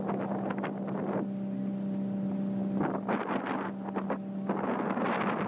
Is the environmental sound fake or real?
real